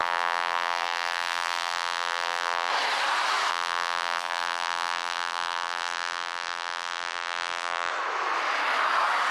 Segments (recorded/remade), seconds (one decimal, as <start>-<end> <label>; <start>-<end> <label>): 0.0-2.7 remade; 2.7-3.5 recorded; 3.5-7.9 remade; 7.9-9.3 recorded